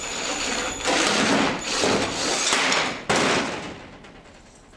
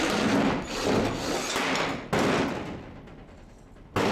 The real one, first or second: second